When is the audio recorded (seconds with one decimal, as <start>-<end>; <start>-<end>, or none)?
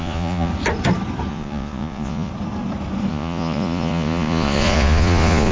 0.5-1.3; 2.3-3.1